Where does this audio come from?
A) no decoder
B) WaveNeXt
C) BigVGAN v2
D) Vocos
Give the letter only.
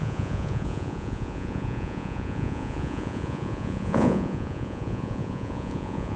D